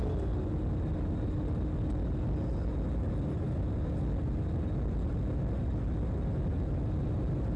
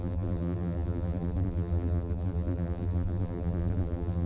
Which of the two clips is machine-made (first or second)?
second